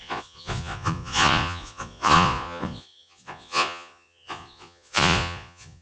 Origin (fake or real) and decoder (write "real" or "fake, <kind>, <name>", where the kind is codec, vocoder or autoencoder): fake, vocoder, Vocos